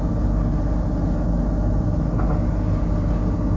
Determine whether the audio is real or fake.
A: real